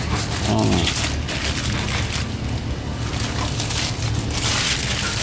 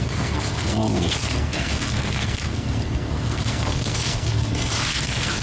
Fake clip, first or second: second